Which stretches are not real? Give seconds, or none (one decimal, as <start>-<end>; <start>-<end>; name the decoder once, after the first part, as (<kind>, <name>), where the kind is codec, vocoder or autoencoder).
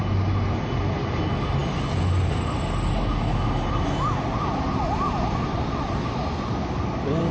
none